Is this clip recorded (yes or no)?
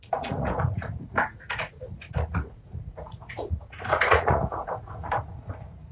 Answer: no